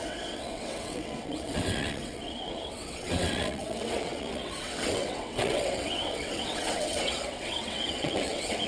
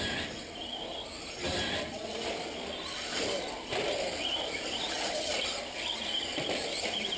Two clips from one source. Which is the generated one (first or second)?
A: first